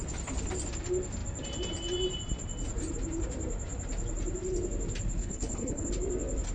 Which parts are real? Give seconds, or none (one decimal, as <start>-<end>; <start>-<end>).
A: 0.0-5.2; 5.9-6.5